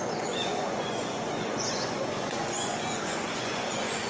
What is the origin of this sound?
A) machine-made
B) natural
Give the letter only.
A